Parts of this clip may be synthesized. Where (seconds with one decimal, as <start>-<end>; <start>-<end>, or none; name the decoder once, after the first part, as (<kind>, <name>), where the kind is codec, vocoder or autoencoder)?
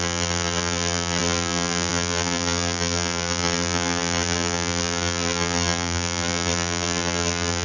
0.0-7.6 (vocoder, BigVGAN v2)